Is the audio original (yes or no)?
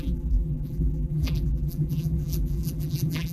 no